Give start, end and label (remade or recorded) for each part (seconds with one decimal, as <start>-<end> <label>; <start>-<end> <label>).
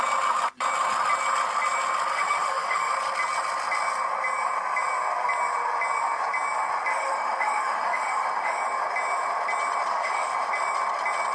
0.0-2.1 recorded; 2.1-2.9 remade; 2.9-6.9 recorded; 6.9-8.6 remade; 8.6-9.9 recorded; 9.9-10.5 remade; 10.5-11.3 recorded